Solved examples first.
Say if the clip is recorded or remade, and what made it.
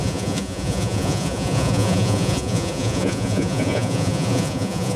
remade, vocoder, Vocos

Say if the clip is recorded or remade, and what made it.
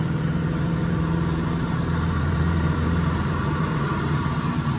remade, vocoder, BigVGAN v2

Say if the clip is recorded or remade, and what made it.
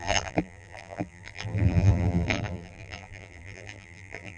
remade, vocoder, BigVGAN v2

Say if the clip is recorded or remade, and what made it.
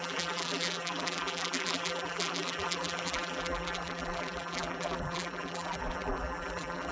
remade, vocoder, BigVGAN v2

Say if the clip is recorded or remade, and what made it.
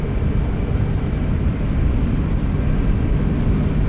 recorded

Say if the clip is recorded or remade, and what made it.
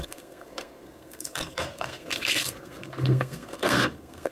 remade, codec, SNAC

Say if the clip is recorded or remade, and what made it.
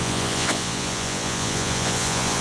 remade, vocoder, Vocos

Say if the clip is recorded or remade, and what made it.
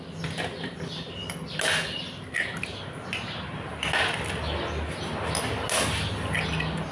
recorded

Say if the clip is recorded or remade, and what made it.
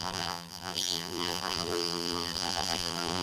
remade, vocoder, BigVGAN v2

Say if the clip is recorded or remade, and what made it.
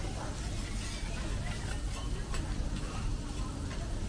recorded